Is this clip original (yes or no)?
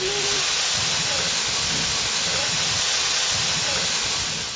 yes